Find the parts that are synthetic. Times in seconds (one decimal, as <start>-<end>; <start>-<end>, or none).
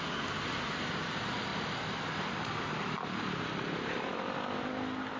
1.5-4.6